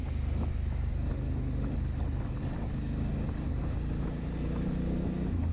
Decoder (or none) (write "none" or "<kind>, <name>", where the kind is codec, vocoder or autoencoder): none